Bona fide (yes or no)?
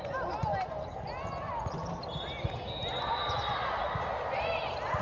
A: yes